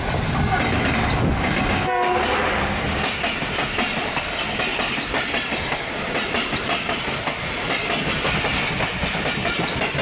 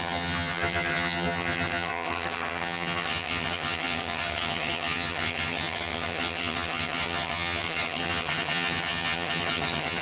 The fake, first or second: second